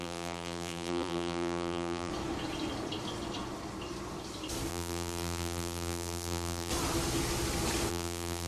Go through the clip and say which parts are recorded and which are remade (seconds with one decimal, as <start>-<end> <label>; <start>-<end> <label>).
0.0-2.1 remade; 2.1-4.7 recorded; 4.7-6.7 remade; 6.7-7.9 recorded; 7.9-8.5 remade